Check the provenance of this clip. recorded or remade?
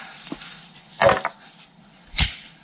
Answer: remade